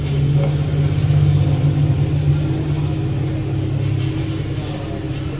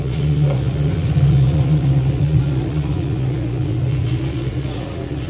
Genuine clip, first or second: first